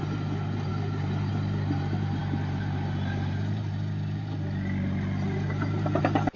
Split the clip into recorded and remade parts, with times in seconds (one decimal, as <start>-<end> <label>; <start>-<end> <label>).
0.0-6.4 recorded